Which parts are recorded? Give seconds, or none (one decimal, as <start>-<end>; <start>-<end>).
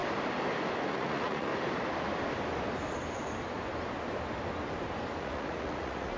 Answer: 0.0-0.9; 1.5-5.2